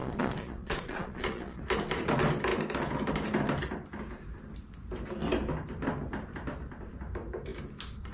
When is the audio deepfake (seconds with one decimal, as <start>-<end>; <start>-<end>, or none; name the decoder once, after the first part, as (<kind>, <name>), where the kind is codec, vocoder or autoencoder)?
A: 0.0-1.6 (vocoder, Vocos)